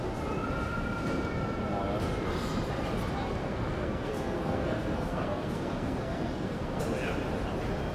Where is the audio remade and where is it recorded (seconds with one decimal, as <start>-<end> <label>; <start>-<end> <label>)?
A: 0.0-3.4 recorded; 3.4-6.8 remade; 6.8-7.9 recorded